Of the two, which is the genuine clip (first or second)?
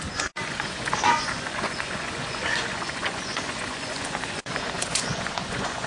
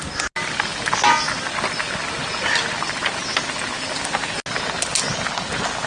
second